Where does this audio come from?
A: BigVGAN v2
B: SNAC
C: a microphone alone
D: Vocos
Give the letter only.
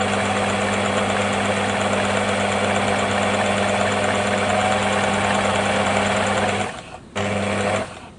C